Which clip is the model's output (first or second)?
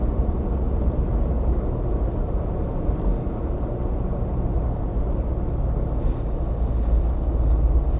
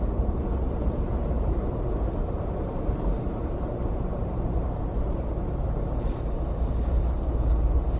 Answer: second